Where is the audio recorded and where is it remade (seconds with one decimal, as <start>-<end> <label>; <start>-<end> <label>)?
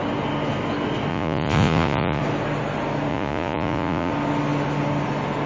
0.0-1.1 recorded; 1.1-2.2 remade; 2.2-3.1 recorded; 3.1-4.1 remade; 4.1-5.5 recorded